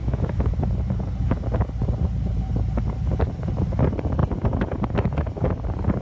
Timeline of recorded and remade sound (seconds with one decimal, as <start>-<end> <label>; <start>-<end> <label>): 0.0-0.5 remade; 0.5-6.0 recorded